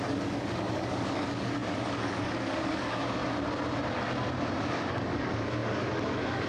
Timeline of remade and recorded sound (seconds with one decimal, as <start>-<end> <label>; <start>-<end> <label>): 0.0-3.2 remade; 3.2-4.6 recorded; 4.6-6.5 remade